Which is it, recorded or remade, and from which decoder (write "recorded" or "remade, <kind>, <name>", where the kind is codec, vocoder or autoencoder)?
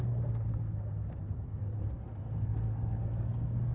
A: remade, codec, SNAC